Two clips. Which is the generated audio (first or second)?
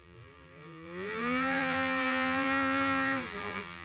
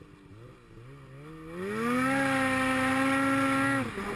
first